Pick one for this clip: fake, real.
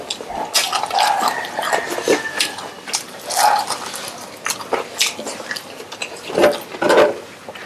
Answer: real